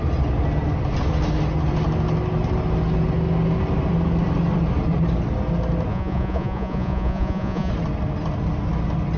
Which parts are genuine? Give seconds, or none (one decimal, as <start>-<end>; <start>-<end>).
0.0-5.9; 7.7-9.2